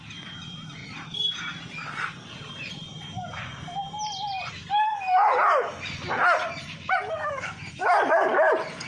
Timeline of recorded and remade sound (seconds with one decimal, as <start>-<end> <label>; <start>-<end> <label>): 0.0-0.8 recorded; 0.8-4.5 remade; 4.5-6.4 recorded; 6.4-7.0 remade; 7.0-8.9 recorded